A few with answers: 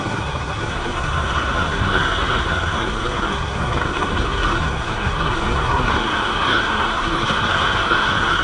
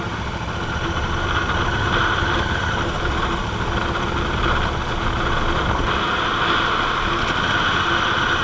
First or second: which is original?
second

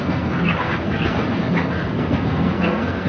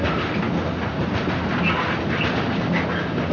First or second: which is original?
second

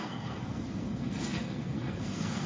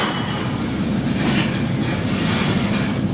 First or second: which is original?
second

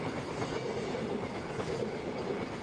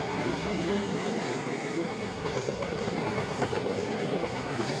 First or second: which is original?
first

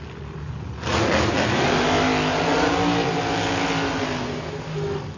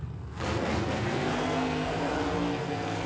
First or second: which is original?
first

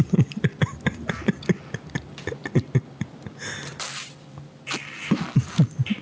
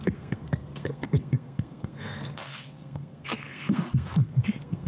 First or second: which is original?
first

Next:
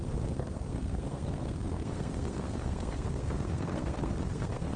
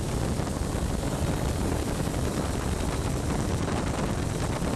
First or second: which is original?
second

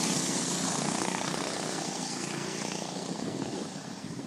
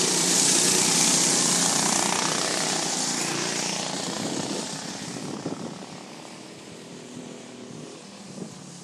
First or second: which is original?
second